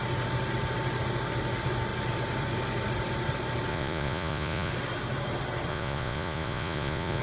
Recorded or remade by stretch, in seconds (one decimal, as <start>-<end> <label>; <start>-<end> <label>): 0.0-3.7 recorded; 3.7-4.7 remade; 4.7-5.7 recorded; 5.7-7.2 remade